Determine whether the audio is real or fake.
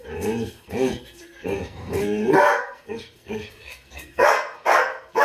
fake